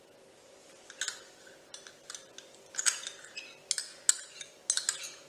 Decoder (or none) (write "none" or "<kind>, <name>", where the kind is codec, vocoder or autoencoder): none